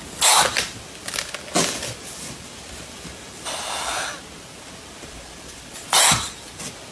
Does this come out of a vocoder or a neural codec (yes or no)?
no